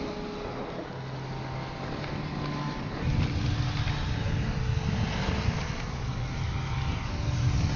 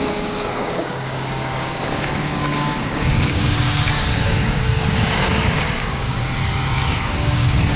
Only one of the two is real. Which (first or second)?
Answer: first